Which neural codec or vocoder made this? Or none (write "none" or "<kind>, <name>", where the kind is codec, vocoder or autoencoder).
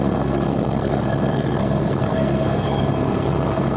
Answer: codec, SNAC